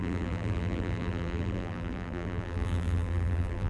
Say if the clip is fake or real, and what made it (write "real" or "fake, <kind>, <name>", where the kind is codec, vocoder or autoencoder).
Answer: fake, vocoder, BigVGAN v2